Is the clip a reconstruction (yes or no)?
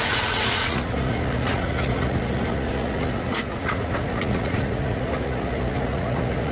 yes